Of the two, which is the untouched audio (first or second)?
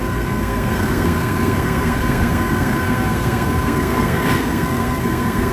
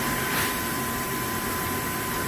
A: second